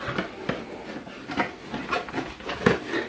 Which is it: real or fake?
real